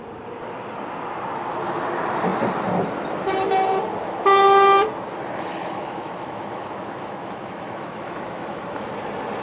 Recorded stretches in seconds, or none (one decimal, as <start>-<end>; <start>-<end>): 0.0-5.5; 8.9-9.4